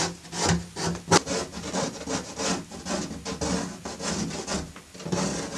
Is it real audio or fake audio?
real